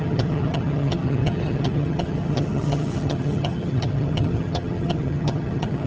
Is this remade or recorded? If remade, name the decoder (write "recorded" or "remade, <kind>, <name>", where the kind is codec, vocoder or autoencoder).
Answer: remade, vocoder, HiFi-GAN